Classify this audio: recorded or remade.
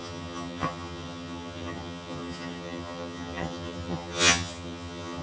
remade